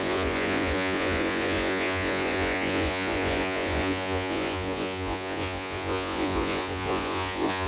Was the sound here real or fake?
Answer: fake